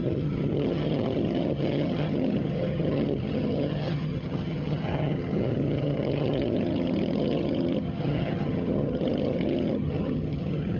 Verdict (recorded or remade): remade